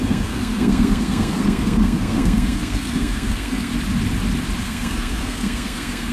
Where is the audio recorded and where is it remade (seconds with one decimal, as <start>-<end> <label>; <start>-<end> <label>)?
0.0-3.7 remade; 3.7-4.6 recorded; 4.6-6.1 remade